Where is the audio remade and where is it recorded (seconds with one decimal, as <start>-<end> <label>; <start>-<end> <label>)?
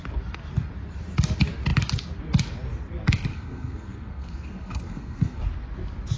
0.0-3.3 recorded; 3.3-5.4 remade; 5.4-6.2 recorded